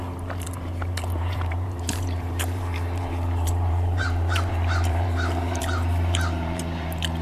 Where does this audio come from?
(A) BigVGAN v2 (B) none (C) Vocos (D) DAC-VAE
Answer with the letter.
A